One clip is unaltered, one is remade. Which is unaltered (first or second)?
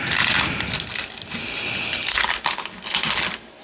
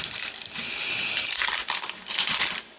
first